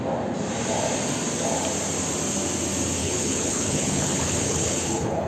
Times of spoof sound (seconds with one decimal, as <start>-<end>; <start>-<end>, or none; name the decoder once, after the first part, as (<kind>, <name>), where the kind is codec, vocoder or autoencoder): 3.0-5.3 (codec, HILCodec)